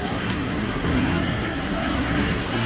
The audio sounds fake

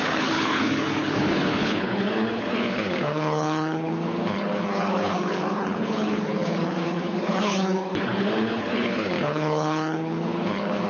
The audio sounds fake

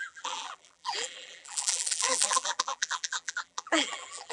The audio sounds fake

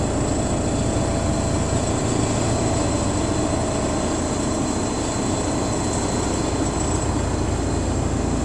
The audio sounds real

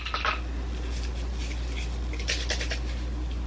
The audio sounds real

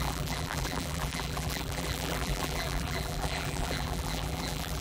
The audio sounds fake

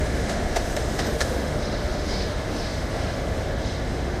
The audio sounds fake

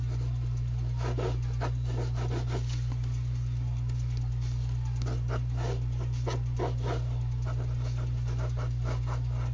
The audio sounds real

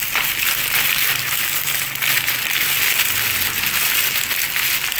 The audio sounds real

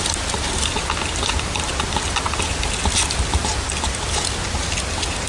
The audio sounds real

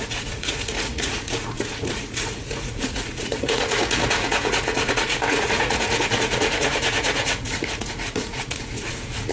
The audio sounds fake